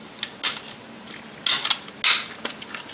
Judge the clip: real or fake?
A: real